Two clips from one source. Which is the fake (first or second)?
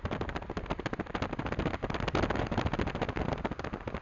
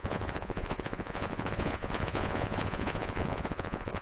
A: second